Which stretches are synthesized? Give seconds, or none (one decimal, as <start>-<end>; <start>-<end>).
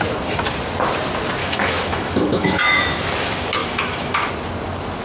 1.4-3.0; 3.6-4.3